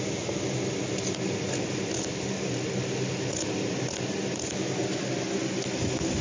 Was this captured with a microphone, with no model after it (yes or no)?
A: yes